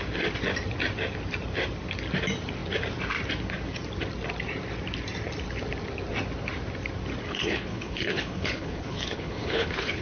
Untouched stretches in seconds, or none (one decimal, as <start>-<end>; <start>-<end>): 0.0-7.3